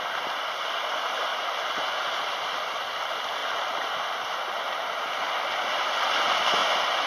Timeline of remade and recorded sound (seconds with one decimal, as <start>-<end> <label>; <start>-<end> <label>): 0.0-1.3 recorded; 1.3-2.6 remade; 2.6-3.4 recorded; 3.4-5.0 remade; 5.0-7.1 recorded